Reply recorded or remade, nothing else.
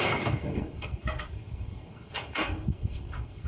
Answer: remade